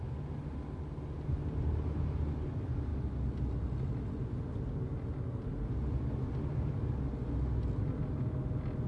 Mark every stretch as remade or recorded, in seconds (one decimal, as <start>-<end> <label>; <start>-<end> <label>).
0.0-8.9 recorded